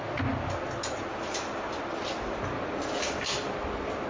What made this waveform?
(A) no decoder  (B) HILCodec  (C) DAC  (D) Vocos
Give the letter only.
A